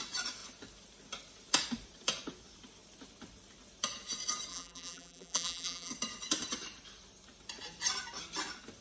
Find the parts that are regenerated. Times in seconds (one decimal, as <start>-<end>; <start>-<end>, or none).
4.5-5.9

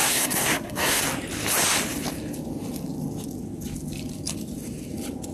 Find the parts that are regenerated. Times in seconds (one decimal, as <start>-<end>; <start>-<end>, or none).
0.0-1.0

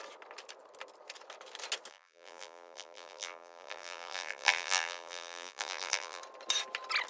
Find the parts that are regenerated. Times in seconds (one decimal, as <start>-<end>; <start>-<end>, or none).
1.9-6.2

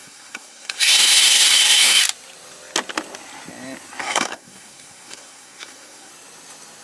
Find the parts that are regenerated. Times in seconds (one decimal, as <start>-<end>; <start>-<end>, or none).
0.0-2.0; 4.0-6.1

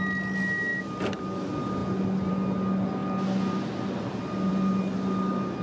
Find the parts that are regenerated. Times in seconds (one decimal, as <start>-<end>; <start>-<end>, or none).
none